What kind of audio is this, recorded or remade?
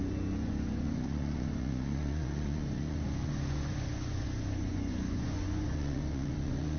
remade